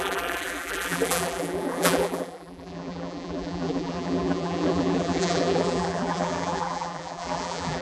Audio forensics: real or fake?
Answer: fake